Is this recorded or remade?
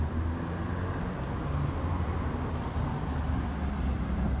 recorded